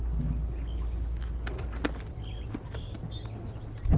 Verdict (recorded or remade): recorded